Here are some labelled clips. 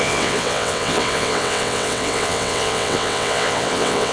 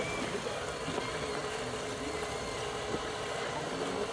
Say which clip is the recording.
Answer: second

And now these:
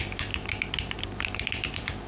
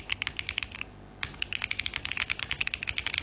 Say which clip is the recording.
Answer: second